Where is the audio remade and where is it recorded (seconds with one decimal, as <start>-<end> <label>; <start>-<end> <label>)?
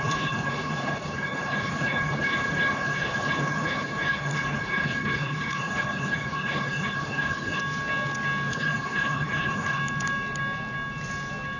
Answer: 0.0-7.6 remade; 7.6-8.5 recorded; 8.5-9.8 remade; 9.8-11.6 recorded